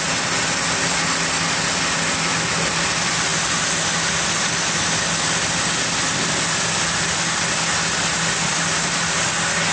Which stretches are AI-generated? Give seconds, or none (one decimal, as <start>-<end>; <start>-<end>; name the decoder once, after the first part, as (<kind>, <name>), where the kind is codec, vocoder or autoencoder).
none

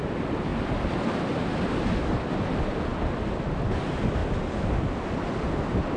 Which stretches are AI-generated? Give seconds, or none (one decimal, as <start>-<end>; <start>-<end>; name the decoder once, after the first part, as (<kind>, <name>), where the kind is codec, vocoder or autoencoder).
none